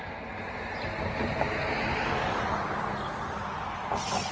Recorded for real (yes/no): yes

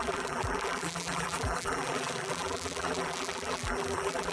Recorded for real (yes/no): no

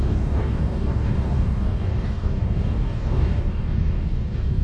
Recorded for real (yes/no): no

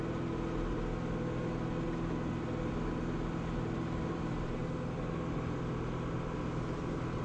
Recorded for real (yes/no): yes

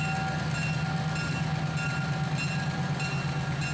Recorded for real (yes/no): yes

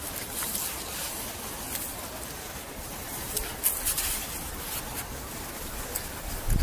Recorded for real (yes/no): yes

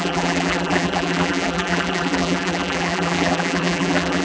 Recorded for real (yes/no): no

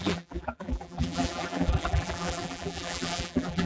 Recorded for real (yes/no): no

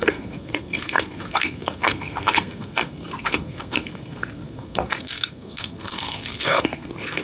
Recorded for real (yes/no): no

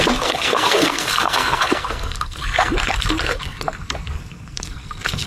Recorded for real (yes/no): no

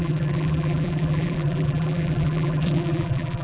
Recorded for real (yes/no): no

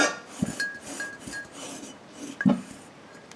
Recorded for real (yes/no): yes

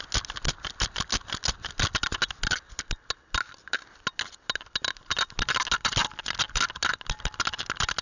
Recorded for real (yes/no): yes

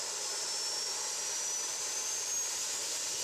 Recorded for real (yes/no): no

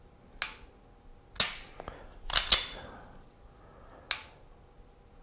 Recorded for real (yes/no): yes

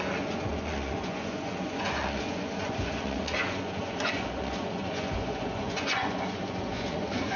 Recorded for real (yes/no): no